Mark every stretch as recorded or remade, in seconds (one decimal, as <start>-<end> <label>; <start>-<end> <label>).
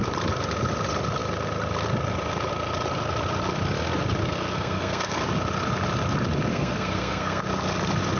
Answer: 0.0-4.2 recorded; 4.2-5.2 remade; 5.2-6.5 recorded; 6.5-7.4 remade; 7.4-8.2 recorded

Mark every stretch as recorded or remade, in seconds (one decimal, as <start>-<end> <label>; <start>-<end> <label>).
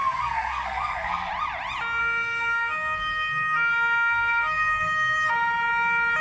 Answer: 0.0-1.3 remade; 1.3-2.0 recorded; 2.0-5.3 remade; 5.3-6.2 recorded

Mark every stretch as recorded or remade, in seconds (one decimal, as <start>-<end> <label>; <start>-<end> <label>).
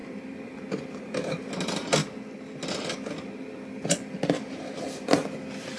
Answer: 0.0-0.6 remade; 0.6-5.8 recorded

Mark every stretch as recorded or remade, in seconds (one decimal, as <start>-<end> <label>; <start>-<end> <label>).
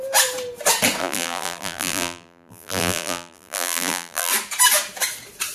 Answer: 0.0-1.0 recorded; 1.0-4.3 remade; 4.3-5.5 recorded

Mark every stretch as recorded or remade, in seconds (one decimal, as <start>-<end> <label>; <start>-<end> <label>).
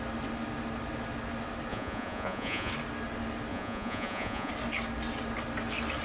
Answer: 0.0-1.7 recorded; 1.7-2.7 remade; 2.7-3.5 recorded; 3.5-4.5 remade; 4.5-6.0 recorded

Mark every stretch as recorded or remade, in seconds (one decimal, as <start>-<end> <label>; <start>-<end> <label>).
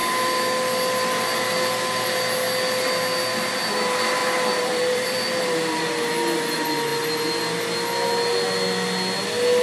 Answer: 0.0-4.2 recorded; 4.2-5.8 remade; 5.8-9.6 recorded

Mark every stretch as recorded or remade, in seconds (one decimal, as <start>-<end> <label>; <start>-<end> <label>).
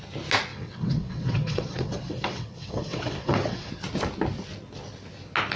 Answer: 0.0-0.5 recorded; 0.5-3.7 remade; 3.7-5.6 recorded